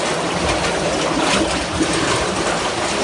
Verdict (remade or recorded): recorded